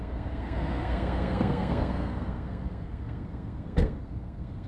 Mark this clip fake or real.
fake